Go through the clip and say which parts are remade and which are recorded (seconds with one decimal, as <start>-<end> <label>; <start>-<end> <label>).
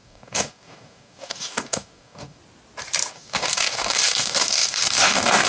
0.0-2.4 remade; 2.4-3.1 recorded; 3.1-5.5 remade